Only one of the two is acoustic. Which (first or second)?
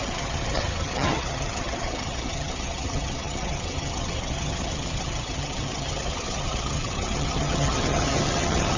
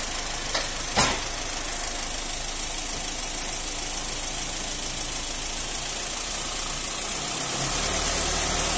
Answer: second